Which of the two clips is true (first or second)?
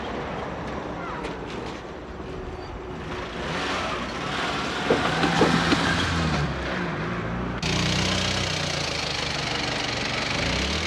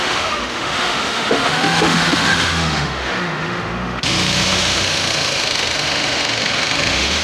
first